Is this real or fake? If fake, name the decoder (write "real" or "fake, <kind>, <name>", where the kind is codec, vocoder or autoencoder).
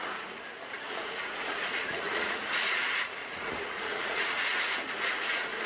fake, vocoder, Vocos